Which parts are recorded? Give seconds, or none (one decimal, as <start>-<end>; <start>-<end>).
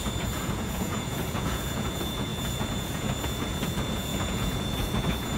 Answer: none